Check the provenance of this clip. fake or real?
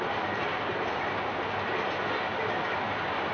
real